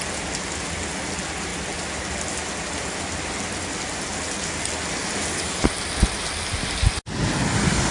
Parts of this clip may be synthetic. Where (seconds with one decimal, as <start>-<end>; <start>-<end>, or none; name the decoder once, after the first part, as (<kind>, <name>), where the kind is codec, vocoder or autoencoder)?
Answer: none